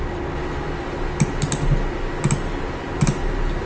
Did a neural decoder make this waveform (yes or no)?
no